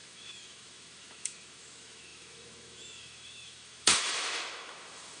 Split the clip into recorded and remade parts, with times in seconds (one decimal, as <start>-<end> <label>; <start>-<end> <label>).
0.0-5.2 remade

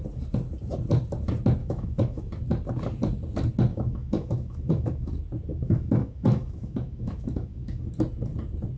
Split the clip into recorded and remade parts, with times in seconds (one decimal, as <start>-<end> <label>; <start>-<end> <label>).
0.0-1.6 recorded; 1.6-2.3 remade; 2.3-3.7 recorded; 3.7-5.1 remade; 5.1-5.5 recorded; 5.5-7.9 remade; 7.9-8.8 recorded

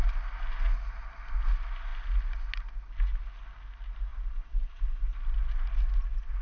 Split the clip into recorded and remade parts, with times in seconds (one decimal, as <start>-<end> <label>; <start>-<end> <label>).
0.0-6.4 recorded

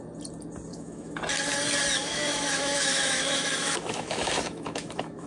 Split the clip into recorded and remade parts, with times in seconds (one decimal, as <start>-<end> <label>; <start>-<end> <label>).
0.0-0.7 recorded; 0.7-1.2 remade; 1.2-2.0 recorded; 2.0-5.3 remade

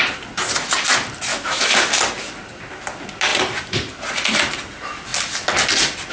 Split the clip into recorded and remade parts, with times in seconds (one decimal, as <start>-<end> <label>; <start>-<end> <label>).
0.0-1.3 recorded; 1.3-1.8 remade; 1.8-6.1 recorded

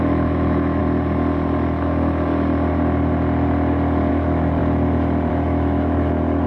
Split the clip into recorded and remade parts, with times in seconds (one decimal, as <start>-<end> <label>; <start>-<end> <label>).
0.0-0.8 remade; 0.8-4.1 recorded; 4.1-4.6 remade; 4.6-5.3 recorded; 5.3-6.5 remade

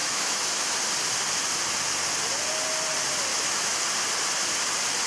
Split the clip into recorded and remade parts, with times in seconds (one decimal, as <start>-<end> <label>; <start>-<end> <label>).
0.0-0.7 remade; 0.7-3.3 recorded; 3.3-3.8 remade; 3.8-5.1 recorded